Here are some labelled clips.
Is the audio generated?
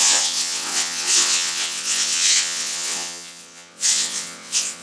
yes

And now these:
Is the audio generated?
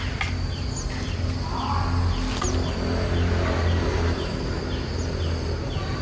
no